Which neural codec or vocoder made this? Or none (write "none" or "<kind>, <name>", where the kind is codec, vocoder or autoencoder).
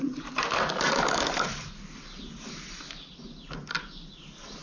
none